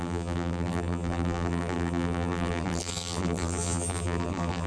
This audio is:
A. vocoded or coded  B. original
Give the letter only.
A